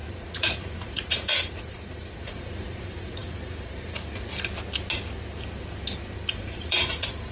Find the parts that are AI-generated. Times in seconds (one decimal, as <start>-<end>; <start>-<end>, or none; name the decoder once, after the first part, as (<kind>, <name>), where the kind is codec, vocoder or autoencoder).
0.0-4.3 (vocoder, Vocos); 6.3-7.3